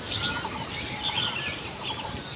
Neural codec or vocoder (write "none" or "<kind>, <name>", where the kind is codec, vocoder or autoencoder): none